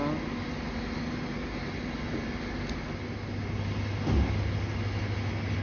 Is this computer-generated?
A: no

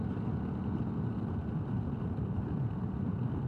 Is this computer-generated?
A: no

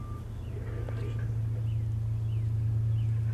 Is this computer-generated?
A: no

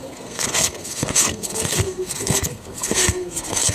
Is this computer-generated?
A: yes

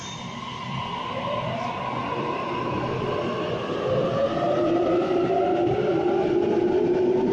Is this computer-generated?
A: no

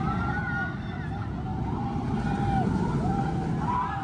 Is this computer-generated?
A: no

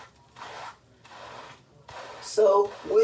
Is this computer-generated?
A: no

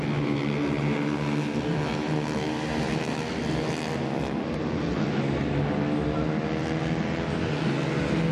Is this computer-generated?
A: no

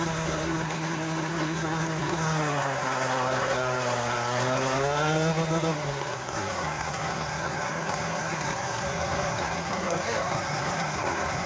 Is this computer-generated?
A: yes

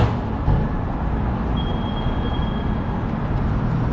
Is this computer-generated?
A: no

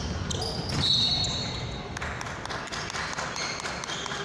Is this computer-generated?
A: no